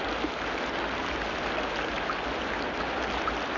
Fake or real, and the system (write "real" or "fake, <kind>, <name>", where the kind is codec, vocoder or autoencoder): real